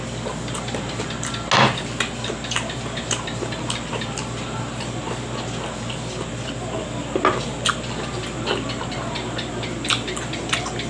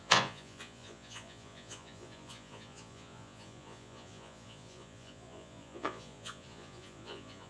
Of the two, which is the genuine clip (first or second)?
first